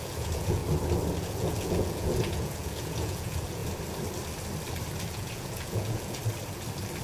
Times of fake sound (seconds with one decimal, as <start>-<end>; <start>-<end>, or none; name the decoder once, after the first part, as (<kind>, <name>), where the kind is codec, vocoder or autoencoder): 0.0-0.6 (vocoder, Vocos); 1.2-3.6; 5.1-6.2